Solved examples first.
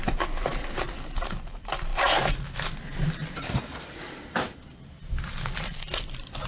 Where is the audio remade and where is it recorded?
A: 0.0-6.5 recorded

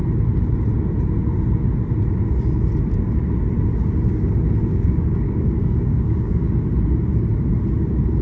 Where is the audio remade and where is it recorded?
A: 0.0-4.7 recorded; 4.7-6.6 remade; 6.6-8.2 recorded

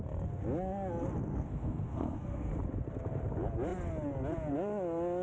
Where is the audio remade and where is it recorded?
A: 0.0-1.3 recorded; 1.3-2.5 remade; 2.5-5.2 recorded